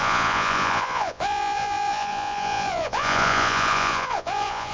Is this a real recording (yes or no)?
no